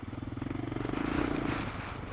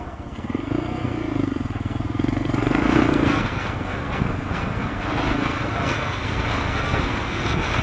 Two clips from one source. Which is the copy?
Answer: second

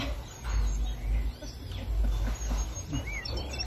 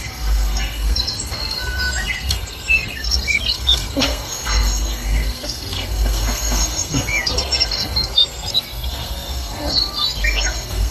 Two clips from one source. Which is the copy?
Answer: second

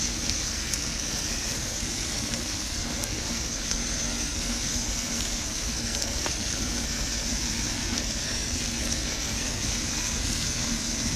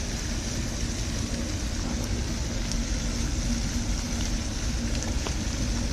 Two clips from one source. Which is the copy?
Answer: first